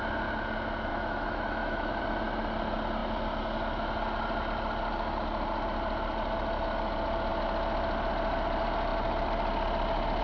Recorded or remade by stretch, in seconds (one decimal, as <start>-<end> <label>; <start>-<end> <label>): 0.0-0.9 recorded; 0.9-2.0 remade; 2.0-10.2 recorded